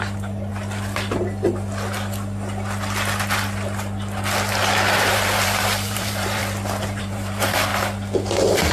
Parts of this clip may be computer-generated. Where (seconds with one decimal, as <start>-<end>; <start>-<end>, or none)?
0.0-0.5; 5.0-6.4; 7.0-7.7